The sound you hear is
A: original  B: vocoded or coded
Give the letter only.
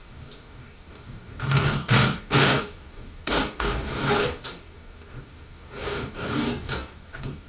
B